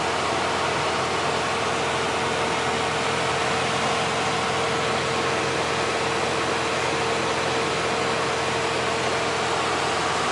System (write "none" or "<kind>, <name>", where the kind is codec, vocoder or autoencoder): none